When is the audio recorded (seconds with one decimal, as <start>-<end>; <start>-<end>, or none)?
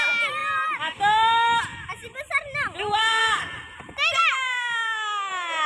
0.0-5.7